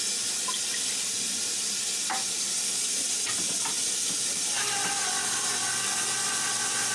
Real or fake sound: real